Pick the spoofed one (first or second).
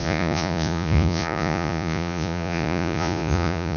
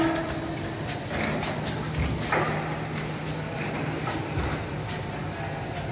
first